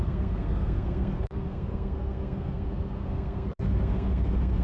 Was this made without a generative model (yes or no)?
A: no